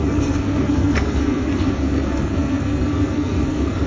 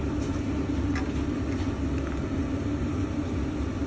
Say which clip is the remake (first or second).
first